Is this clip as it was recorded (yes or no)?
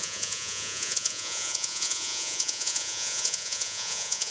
no